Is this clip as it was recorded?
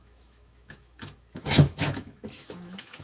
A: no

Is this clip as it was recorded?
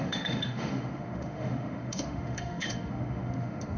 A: no